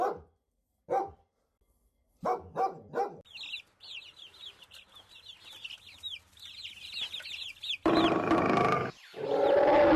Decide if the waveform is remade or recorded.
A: recorded